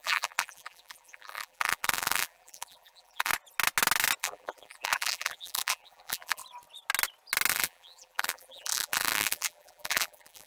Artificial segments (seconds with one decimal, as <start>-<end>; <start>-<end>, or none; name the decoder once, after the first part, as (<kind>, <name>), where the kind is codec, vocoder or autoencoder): 0.0-3.3 (vocoder, BigVGAN v2); 4.2-6.4; 7.5-10.5